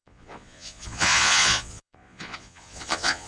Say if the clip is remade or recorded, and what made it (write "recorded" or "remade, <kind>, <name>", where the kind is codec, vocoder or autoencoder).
remade, vocoder, Vocos